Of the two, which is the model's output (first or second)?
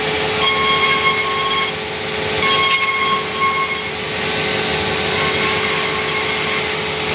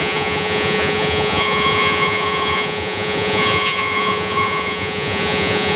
second